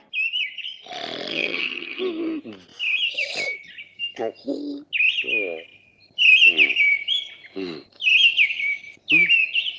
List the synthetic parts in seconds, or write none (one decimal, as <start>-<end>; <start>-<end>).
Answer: 1.3-2.0